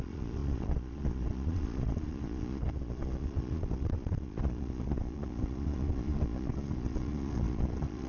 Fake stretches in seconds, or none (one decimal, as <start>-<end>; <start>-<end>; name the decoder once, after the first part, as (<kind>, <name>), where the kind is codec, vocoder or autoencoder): 0.0-8.1 (vocoder, Vocos)